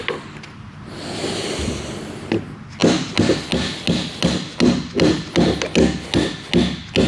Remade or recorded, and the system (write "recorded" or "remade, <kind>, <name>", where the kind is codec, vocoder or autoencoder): recorded